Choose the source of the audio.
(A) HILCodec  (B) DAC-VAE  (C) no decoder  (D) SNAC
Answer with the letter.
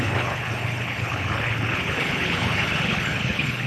A